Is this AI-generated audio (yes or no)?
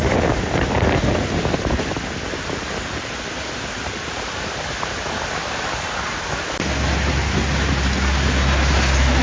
no